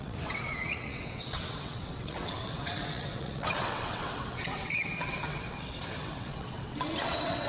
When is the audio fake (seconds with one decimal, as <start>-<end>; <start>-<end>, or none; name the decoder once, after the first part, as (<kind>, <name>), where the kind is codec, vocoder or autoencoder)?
0.0-7.5 (vocoder, WaveNeXt)